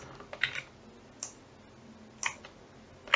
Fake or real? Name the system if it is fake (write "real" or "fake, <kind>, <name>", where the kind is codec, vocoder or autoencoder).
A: real